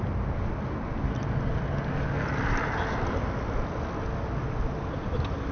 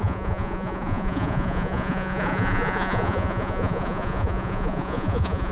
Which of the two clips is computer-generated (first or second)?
second